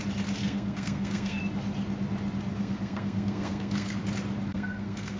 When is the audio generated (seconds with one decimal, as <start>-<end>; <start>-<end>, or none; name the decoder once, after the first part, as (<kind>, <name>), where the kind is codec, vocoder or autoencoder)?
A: 0.4-1.4 (codec, SNAC); 2.5-4.0; 4.5-5.2